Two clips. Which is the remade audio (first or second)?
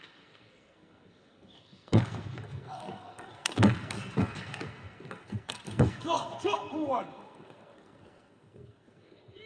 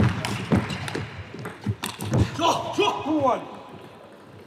first